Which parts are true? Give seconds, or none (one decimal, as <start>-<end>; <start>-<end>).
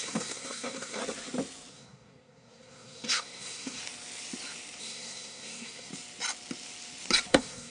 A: 1.0-1.7; 3.8-4.8; 5.9-7.3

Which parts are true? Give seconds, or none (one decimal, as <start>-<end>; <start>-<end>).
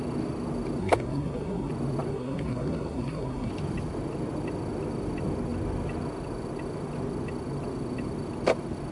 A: 0.0-0.8; 1.7-2.1; 3.5-8.9